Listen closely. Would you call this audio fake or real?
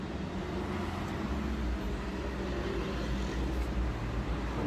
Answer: real